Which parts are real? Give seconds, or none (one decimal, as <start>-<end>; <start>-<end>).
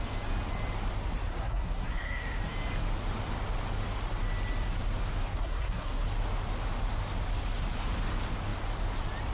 0.0-1.3; 2.4-5.3; 6.0-9.3